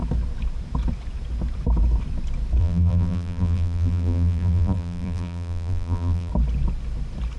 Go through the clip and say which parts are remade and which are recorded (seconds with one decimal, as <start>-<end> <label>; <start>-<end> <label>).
0.0-2.6 recorded; 2.6-6.3 remade; 6.3-7.4 recorded